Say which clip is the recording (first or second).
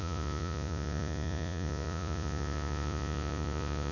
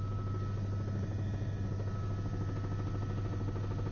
second